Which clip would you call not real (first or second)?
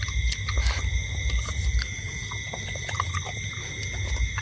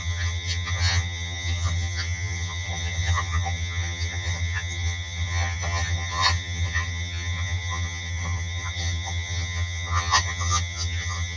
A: second